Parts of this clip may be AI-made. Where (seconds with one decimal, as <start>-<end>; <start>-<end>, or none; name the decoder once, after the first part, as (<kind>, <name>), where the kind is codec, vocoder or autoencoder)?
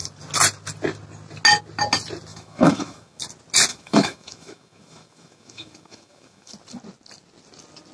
2.3-3.2 (autoencoder, DAC-VAE); 3.7-6.5